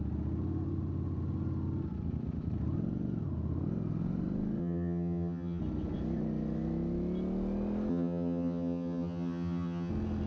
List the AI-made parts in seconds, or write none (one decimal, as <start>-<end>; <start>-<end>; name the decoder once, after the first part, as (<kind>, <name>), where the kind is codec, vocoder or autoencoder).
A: 4.6-5.6 (vocoder, HiFi-GAN); 7.9-9.9